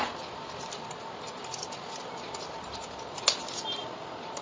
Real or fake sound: real